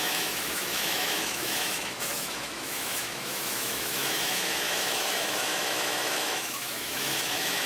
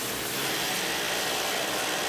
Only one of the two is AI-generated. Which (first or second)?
first